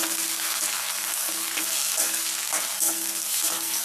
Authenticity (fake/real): fake